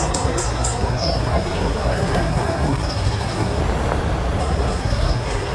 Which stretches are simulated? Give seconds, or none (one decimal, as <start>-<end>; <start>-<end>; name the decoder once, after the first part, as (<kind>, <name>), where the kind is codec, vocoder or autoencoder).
0.0-3.6 (codec, SNAC); 4.4-5.5

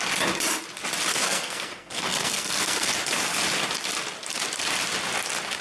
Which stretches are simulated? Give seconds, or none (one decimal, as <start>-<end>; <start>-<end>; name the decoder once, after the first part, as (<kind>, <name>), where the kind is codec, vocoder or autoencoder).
1.1-2.9 (codec, SNAC)

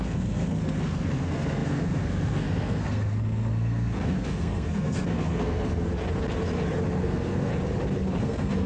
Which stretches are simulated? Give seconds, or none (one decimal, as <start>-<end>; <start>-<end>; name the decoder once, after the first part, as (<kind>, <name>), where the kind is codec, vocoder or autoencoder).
0.0-5.9 (codec, SNAC); 7.0-7.5; 8.2-8.7

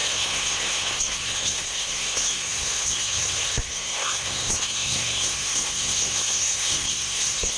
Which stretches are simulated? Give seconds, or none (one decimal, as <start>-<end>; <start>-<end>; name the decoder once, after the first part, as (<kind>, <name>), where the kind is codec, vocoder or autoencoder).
0.0-7.6 (codec, SNAC)

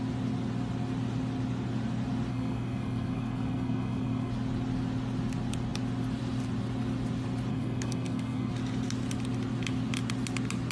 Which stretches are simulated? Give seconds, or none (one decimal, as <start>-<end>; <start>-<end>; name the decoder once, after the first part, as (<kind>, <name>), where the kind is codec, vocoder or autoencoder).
2.3-4.3 (codec, SNAC); 7.5-8.5